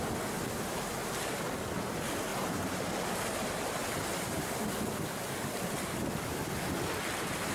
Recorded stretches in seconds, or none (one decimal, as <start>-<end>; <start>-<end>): 0.0-2.3; 2.8-7.5